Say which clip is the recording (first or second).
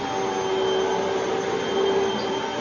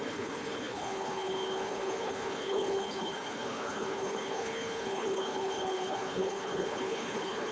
first